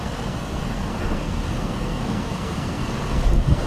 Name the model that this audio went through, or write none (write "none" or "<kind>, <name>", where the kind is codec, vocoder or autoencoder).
codec, SNAC